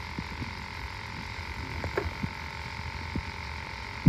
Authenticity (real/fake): real